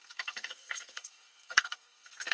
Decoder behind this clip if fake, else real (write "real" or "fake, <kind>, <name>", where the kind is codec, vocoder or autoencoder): fake, codec, SNAC